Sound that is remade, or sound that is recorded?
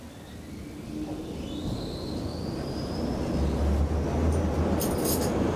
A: recorded